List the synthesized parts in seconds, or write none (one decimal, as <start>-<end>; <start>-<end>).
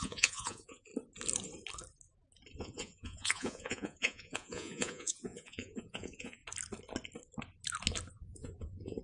0.0-0.9; 2.6-6.4; 8.1-9.0